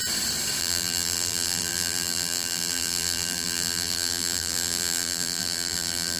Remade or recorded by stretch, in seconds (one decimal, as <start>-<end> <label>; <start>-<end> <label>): 0.0-0.6 recorded; 0.6-6.2 remade